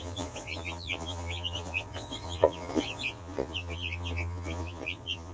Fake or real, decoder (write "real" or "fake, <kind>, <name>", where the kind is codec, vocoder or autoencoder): fake, vocoder, Vocos